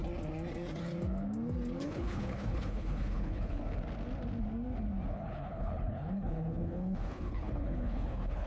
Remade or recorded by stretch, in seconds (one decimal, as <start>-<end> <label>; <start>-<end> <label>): 0.0-1.8 recorded; 1.8-3.6 remade; 3.6-5.1 recorded; 5.1-8.5 remade

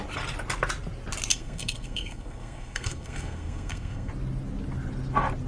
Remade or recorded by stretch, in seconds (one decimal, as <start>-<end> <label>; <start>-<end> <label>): 0.0-1.3 recorded; 1.3-4.1 remade; 4.1-5.5 recorded

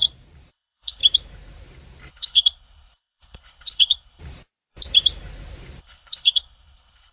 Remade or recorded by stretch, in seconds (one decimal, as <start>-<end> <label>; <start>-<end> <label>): 0.0-0.5 recorded; 0.5-1.0 remade; 1.0-2.1 recorded; 2.1-4.2 remade; 4.2-5.8 recorded; 5.8-7.1 remade